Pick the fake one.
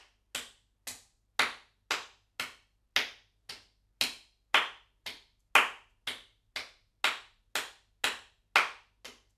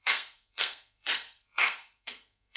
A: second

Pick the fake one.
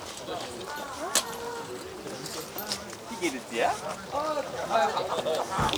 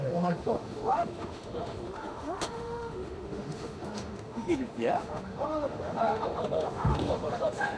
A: second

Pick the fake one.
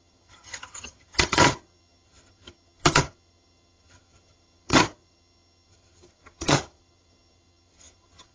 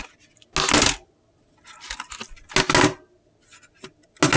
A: first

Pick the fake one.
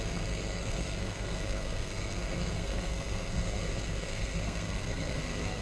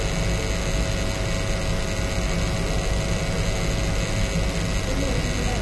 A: first